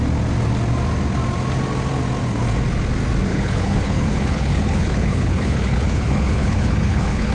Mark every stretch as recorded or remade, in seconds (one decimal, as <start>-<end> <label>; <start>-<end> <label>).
0.0-3.3 recorded; 3.3-7.3 remade